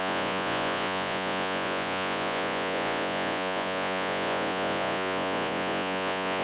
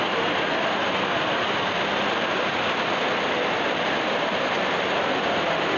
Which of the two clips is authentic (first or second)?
second